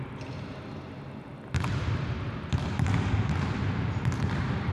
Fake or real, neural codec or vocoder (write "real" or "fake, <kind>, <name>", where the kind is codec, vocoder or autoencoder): real